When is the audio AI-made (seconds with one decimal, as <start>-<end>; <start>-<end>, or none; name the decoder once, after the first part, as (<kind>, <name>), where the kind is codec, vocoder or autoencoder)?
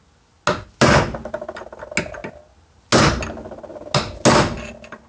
none